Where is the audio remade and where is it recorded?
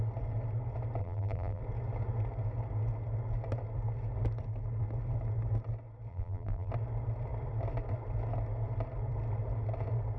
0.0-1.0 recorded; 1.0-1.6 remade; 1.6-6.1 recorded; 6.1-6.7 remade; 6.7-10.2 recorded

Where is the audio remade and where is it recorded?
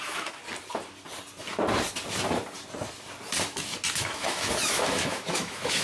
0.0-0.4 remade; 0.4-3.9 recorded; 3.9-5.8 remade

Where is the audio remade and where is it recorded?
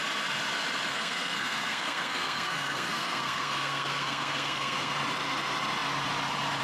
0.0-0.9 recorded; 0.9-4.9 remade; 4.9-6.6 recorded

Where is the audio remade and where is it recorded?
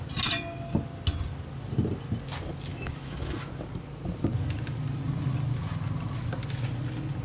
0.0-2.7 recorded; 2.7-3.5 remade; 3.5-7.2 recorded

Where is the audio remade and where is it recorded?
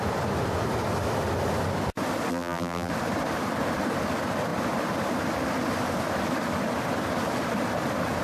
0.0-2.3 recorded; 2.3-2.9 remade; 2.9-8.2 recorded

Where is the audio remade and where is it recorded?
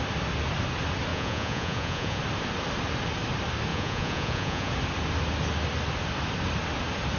0.0-1.1 recorded; 1.1-2.2 remade; 2.2-3.7 recorded; 3.7-4.7 remade; 4.7-7.2 recorded